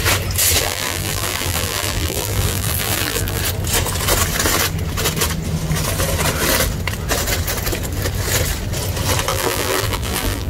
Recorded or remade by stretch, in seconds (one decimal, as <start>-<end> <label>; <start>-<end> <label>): 0.0-0.6 recorded; 0.6-3.4 remade; 3.4-9.3 recorded; 9.3-10.5 remade